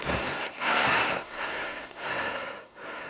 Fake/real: fake